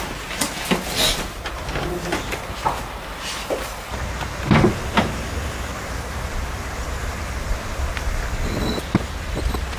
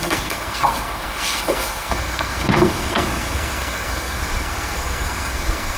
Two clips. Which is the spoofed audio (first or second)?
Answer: second